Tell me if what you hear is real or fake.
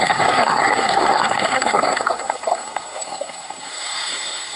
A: fake